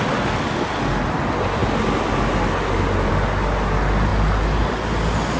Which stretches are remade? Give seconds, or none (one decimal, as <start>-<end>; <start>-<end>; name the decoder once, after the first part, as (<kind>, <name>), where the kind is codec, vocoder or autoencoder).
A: none